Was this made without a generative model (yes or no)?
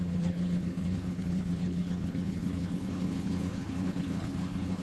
no